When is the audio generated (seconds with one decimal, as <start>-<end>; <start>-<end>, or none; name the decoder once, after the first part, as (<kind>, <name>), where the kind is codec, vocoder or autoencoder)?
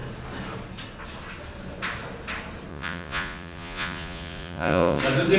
2.7-5.0 (vocoder, Vocos)